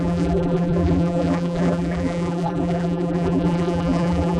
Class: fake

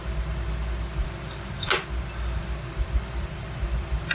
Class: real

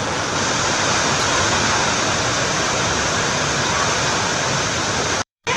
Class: fake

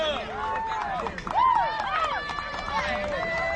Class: real